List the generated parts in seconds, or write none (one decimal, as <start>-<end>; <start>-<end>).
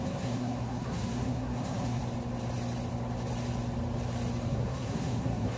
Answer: 0.0-2.0; 4.5-5.6